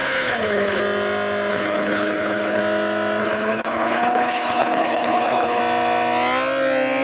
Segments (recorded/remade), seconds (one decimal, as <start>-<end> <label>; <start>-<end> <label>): 0.0-0.8 remade; 0.8-1.5 recorded; 1.5-2.6 remade; 2.6-3.2 recorded; 3.2-5.6 remade; 5.6-7.0 recorded